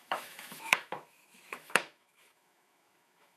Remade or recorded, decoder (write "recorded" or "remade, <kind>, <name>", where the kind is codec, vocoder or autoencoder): remade, autoencoder, DAC-VAE